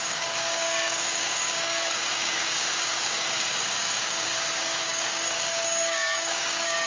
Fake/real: fake